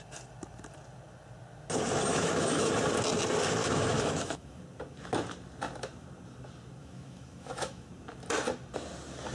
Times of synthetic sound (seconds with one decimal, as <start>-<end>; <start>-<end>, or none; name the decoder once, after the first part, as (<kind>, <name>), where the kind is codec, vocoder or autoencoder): 2.1-2.7 (autoencoder, DAC-VAE); 3.6-4.6; 6.8-7.9